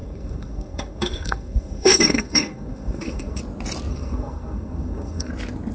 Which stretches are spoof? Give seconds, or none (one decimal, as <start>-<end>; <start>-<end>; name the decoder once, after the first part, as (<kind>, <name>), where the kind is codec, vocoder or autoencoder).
0.0-3.4 (codec, SNAC); 3.9-5.3